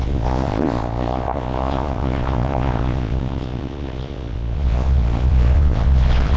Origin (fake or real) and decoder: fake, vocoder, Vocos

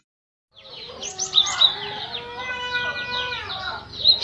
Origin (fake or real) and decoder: real